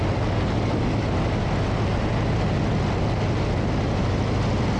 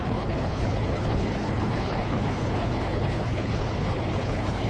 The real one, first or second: first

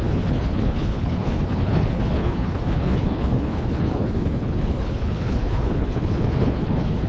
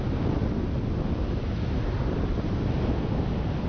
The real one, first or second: second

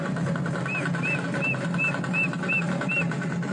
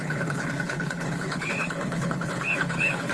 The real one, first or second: first